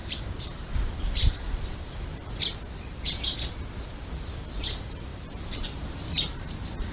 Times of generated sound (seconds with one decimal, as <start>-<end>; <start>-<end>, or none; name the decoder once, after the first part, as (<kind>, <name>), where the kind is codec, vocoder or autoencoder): 0.0-2.2 (vocoder, BigVGAN v2); 4.1-6.9